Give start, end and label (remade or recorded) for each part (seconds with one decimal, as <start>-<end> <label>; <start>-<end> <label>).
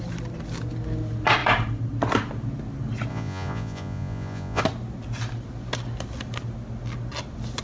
0.0-3.1 recorded; 3.1-4.6 remade; 4.6-7.6 recorded